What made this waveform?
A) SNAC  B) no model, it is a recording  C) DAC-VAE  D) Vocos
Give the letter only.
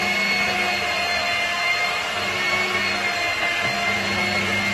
B